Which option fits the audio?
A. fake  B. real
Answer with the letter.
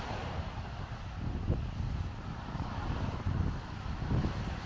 B